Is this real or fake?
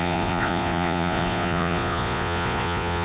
fake